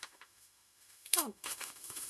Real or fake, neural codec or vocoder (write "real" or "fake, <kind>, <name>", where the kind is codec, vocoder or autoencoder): fake, autoencoder, DAC-VAE